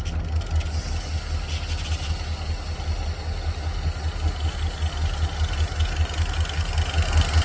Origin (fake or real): real